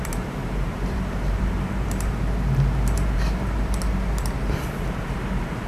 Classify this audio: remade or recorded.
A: remade